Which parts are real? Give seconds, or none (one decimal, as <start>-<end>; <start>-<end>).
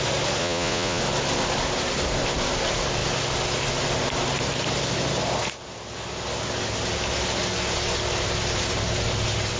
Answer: 0.0-0.4; 1.0-9.6